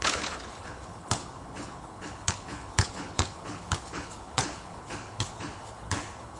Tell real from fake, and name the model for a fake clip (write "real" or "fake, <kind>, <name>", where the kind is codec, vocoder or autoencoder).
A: fake, codec, HILCodec